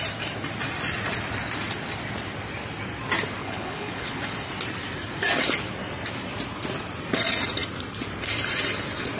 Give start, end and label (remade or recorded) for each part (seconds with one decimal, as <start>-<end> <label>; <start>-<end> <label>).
0.0-3.4 recorded; 3.4-4.2 remade; 4.2-9.2 recorded